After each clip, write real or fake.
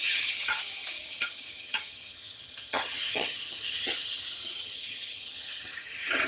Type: fake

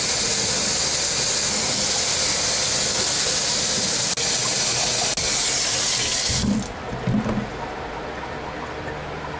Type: real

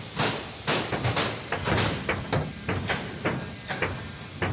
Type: real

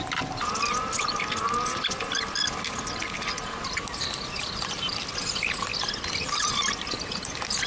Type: real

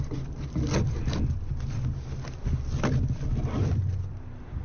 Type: real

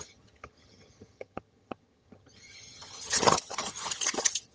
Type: fake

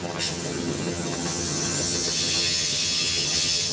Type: fake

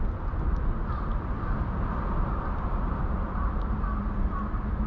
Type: real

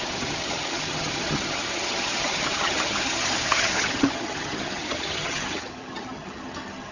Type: fake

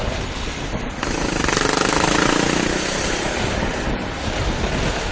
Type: real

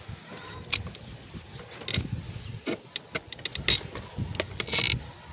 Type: real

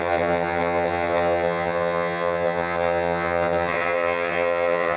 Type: fake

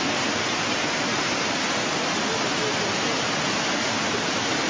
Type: real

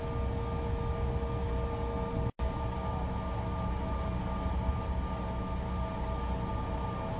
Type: real